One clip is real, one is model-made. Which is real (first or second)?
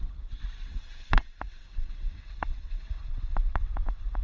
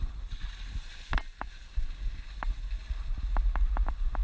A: second